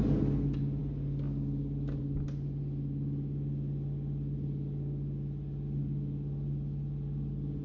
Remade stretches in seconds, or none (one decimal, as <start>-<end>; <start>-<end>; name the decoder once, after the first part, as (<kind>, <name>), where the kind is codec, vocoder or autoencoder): none

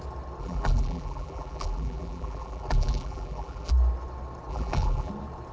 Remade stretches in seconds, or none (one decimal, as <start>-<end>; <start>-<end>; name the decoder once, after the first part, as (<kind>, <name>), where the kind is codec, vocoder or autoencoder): 0.4-3.7 (vocoder, BigVGAN v2); 4.5-5.1